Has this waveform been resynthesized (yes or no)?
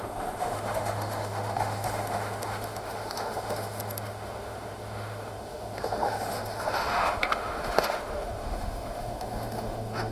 yes